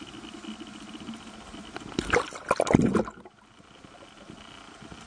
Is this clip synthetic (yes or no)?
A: no